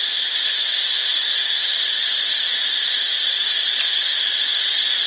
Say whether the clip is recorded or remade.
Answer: recorded